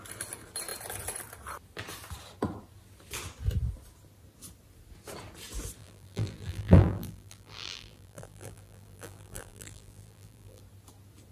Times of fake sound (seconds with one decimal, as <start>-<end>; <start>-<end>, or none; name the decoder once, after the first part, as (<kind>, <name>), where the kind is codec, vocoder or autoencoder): 5.8-10.6 (vocoder, BigVGAN v2)